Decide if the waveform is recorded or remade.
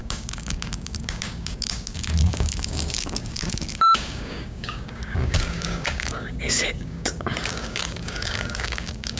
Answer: remade